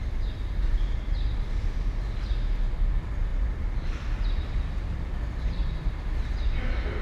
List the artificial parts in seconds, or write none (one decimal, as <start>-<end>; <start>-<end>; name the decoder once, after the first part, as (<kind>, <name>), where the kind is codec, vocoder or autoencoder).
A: 0.0-1.3 (vocoder, BigVGAN v2); 3.3-6.3